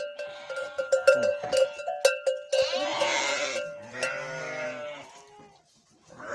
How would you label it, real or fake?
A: real